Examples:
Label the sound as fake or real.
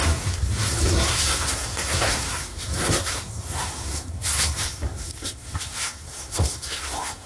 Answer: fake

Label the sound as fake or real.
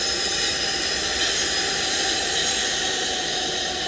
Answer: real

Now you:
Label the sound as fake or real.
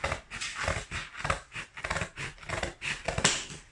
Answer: real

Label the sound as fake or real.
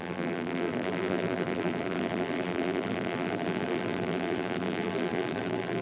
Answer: fake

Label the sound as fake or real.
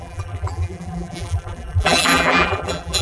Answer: fake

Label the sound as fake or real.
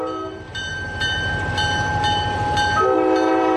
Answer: fake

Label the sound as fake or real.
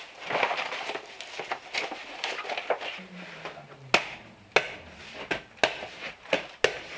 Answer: real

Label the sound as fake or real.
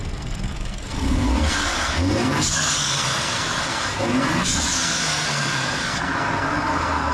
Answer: fake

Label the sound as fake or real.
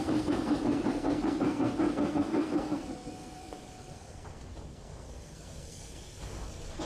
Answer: fake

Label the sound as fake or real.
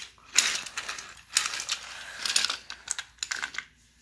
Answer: real